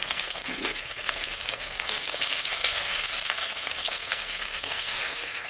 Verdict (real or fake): fake